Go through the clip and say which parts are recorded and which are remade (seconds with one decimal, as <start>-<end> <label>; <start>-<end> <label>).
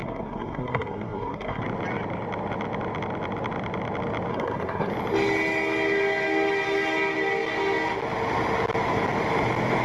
0.0-1.6 remade; 1.6-4.3 recorded; 4.3-4.9 remade; 4.9-9.8 recorded